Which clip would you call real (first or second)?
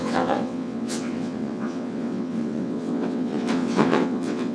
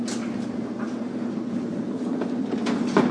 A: second